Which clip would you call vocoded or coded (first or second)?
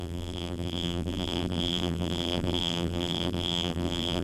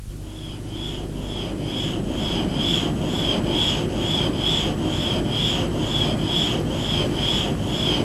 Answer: first